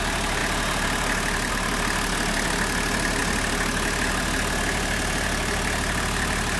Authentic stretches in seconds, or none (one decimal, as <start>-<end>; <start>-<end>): 0.0-6.6